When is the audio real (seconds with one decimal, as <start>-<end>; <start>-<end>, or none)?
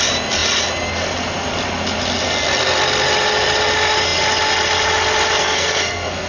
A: 0.0-5.4